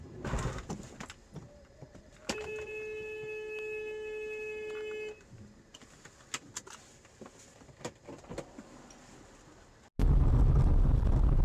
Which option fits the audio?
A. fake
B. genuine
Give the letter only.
B